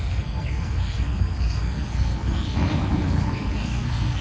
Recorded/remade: remade